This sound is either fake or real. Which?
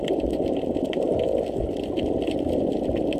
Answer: real